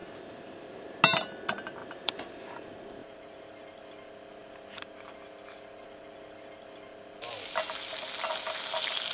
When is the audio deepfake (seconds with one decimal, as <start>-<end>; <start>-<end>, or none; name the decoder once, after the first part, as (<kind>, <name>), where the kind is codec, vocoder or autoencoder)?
0.0-1.0 (vocoder, BigVGAN v2); 1.8-2.5; 3.0-3.6